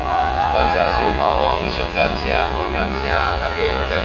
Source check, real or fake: fake